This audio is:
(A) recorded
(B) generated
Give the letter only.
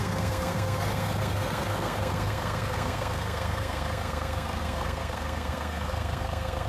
B